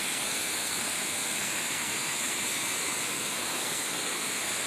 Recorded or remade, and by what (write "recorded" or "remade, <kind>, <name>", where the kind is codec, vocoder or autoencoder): remade, codec, SNAC